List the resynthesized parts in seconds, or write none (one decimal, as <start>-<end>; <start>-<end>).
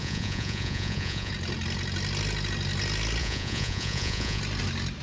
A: 0.0-1.3; 3.2-4.4